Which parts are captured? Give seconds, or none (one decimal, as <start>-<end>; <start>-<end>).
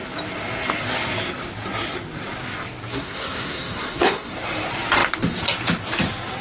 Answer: 0.0-2.9; 4.3-6.4